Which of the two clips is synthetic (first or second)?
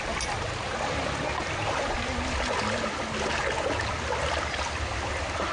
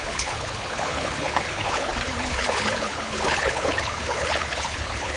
second